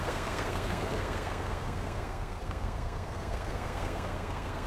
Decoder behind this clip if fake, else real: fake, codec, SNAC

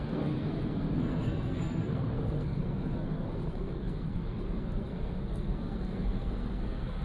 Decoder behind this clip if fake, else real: fake, codec, SNAC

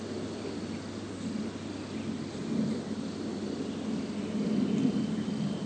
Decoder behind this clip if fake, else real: real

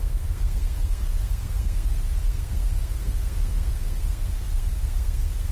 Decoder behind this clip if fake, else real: fake, codec, SNAC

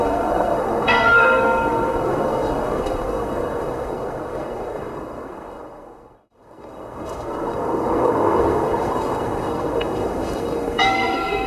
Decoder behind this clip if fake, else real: fake, codec, SNAC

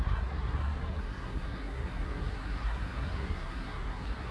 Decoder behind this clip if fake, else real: fake, codec, SNAC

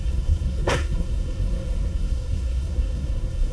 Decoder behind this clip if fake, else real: fake, codec, SNAC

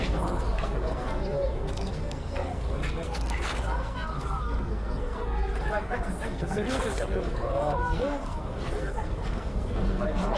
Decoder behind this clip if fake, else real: fake, codec, SNAC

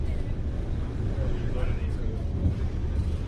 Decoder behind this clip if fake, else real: real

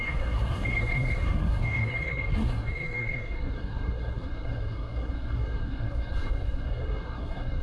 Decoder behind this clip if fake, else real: fake, codec, SNAC